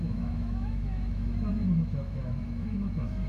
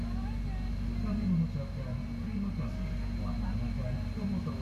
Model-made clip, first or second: first